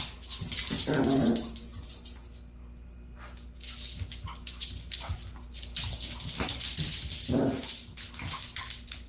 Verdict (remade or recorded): recorded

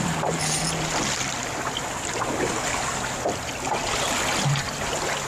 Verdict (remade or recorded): recorded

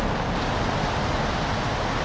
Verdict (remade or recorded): recorded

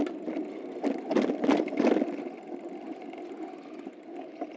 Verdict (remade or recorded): recorded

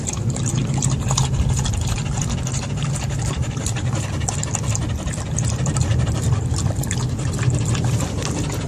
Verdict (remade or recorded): remade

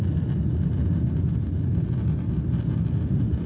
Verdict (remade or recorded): recorded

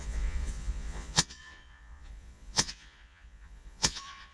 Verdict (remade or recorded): remade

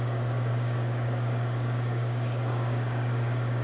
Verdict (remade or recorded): remade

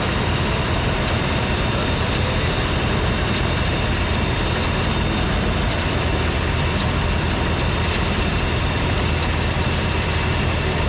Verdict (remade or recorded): recorded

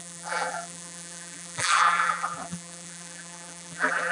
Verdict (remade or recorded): remade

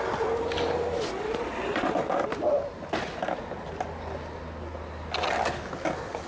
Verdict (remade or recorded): recorded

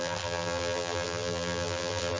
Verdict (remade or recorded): remade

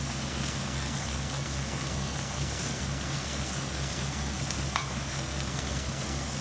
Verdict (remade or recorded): remade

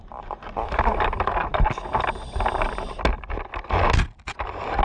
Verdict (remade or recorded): recorded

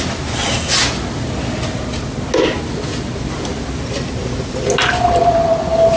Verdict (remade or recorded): recorded